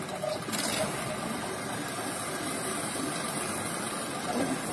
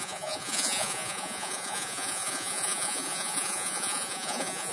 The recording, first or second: first